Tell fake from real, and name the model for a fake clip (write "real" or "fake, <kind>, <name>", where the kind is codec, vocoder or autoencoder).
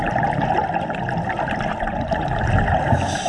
real